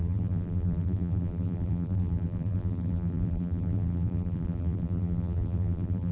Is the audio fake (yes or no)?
yes